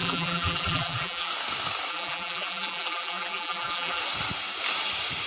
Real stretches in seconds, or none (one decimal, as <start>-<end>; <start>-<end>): 1.3-1.9; 4.0-5.3